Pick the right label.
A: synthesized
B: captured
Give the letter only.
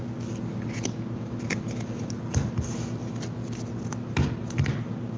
B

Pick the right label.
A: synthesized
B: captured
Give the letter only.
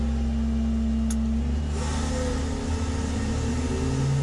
B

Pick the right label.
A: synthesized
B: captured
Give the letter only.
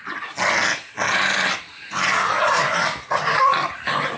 B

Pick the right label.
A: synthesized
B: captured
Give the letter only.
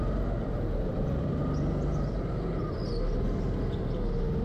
B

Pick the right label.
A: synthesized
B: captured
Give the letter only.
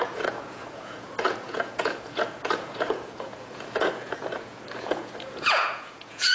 A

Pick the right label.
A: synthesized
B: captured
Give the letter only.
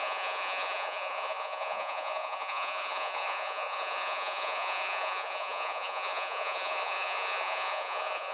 A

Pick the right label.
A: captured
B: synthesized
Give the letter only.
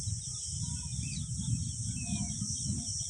A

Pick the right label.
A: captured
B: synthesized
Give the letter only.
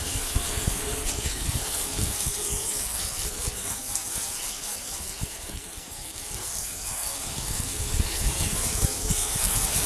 B